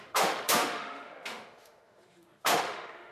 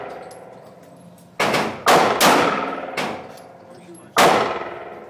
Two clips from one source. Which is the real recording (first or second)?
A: second